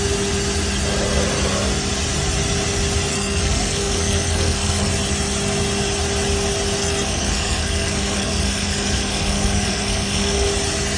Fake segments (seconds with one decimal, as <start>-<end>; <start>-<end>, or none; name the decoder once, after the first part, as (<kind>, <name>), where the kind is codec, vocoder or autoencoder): 3.1-4.9 (codec, SNAC); 6.8-10.5